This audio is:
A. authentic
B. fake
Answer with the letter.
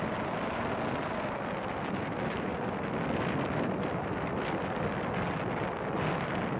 A